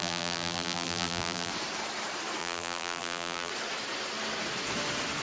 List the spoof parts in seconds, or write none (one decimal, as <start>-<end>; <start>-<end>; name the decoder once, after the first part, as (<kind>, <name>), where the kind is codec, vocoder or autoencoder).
0.0-1.5 (vocoder, BigVGAN v2); 2.4-3.5